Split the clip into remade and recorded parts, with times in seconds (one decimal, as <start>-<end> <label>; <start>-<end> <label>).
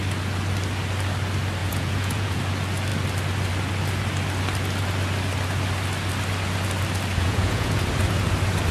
0.0-1.6 recorded; 1.6-2.4 remade; 2.4-7.1 recorded; 7.1-7.8 remade; 7.8-8.7 recorded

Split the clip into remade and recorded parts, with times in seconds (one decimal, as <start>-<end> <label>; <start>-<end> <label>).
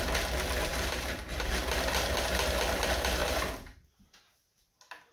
0.0-0.7 recorded; 0.7-1.5 remade; 1.5-3.2 recorded; 3.2-4.6 remade; 4.6-5.1 recorded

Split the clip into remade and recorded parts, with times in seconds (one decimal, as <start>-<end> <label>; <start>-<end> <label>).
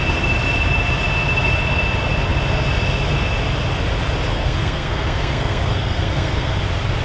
0.0-4.3 recorded; 4.3-6.6 remade; 6.6-7.0 recorded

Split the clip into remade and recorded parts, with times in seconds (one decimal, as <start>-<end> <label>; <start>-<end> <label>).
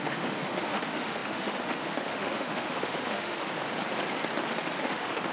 0.0-3.4 remade; 3.4-4.8 recorded; 4.8-5.3 remade